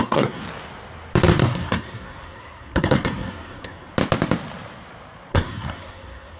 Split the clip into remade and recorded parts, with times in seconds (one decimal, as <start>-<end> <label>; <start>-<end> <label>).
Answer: 0.0-0.4 remade; 0.4-1.4 recorded; 1.4-3.9 remade; 3.9-5.3 recorded; 5.3-6.4 remade